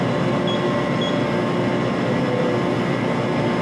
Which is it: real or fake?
real